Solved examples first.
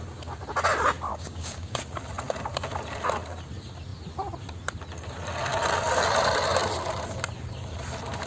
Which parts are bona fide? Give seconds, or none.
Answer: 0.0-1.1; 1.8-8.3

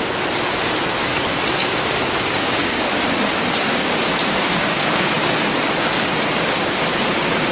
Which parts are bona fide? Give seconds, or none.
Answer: 0.0-1.6; 2.9-3.7; 5.1-7.5

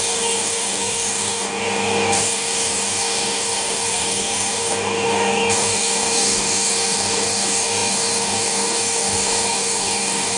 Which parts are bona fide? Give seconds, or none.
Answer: none

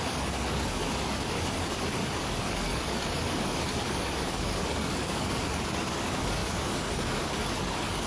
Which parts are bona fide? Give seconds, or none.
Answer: none

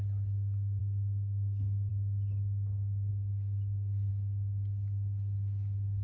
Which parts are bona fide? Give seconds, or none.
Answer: 0.0-0.8; 1.9-3.1; 4.1-6.0